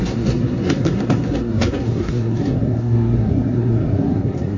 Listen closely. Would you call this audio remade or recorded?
remade